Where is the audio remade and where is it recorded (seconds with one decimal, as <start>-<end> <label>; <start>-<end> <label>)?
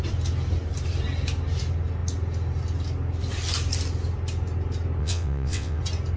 0.0-5.0 recorded; 5.0-5.8 remade; 5.8-6.2 recorded